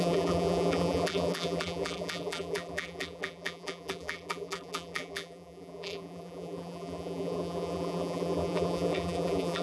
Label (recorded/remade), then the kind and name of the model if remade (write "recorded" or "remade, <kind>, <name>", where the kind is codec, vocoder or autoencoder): remade, vocoder, BigVGAN v2